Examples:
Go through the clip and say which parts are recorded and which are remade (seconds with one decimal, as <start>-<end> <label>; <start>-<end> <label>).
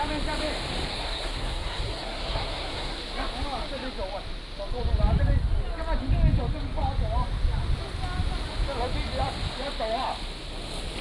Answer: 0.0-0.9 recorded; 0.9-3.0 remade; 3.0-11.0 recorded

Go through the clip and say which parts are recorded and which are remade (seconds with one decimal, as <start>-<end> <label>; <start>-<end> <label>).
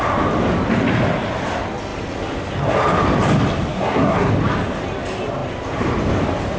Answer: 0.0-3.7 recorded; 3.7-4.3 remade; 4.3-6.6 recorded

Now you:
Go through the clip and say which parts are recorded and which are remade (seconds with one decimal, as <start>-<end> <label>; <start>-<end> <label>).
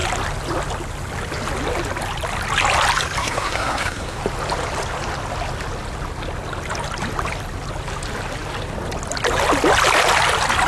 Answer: 0.0-3.2 recorded; 3.2-4.2 remade; 4.2-10.7 recorded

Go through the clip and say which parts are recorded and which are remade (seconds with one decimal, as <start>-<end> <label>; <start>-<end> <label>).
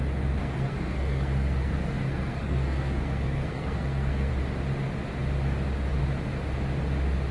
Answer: 0.0-0.4 recorded; 0.4-4.3 remade; 4.3-7.3 recorded